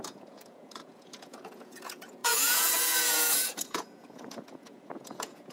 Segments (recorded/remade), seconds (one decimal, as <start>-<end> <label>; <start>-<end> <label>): 0.0-5.5 remade